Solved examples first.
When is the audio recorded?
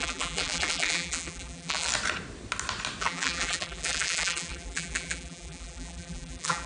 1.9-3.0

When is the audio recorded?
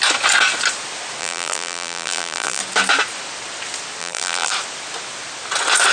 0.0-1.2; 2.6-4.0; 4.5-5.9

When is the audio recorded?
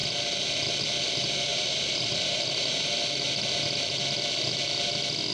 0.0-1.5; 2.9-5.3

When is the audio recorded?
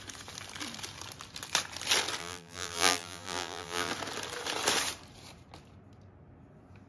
0.0-2.2; 3.9-6.9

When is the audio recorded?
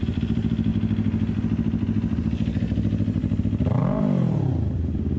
0.0-5.2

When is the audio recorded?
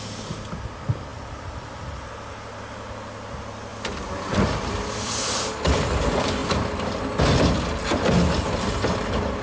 0.0-1.1; 2.1-3.7; 5.6-6.4; 6.9-9.4